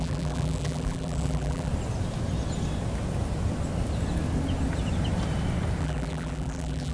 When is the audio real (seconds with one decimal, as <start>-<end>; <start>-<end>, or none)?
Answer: 1.7-5.8